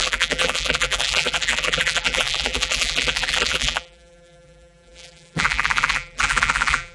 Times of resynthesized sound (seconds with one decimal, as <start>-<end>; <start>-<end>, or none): 0.0-6.9